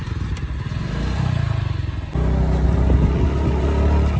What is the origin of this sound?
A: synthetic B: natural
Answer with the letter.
B